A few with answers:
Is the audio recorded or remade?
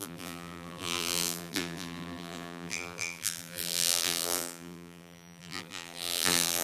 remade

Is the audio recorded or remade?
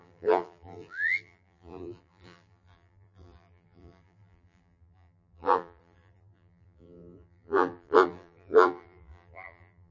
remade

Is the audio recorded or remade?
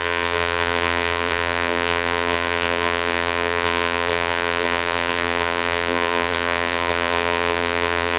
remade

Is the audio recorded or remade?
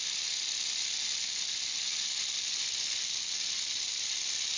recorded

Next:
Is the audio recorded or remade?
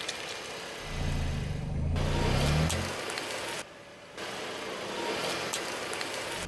recorded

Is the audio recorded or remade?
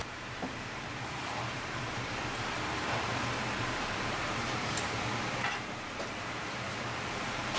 remade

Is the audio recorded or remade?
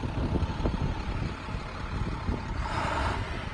recorded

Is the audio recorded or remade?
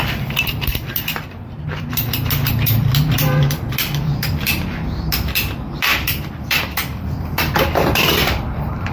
remade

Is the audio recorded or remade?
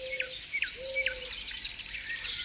recorded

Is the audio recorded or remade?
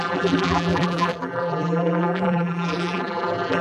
remade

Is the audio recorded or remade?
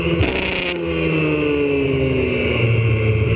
recorded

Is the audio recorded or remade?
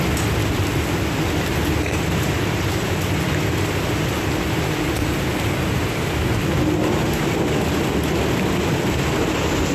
recorded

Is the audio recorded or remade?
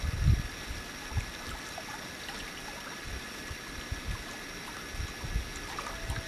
recorded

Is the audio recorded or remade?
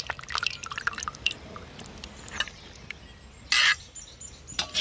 remade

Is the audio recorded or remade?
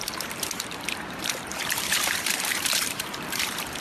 remade